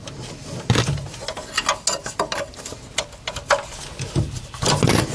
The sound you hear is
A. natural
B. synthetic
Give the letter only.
A